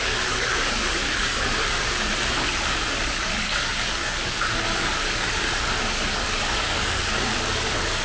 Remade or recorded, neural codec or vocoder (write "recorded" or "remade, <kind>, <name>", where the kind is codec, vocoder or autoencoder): remade, codec, DAC